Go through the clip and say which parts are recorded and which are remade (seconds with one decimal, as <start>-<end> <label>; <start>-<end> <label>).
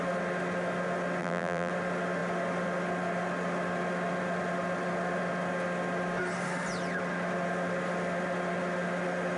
0.0-1.2 recorded; 1.2-1.7 remade; 1.7-9.4 recorded